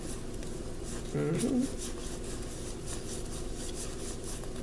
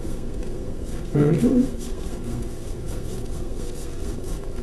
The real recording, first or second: first